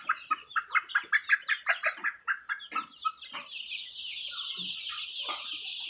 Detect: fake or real real